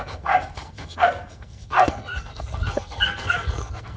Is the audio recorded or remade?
remade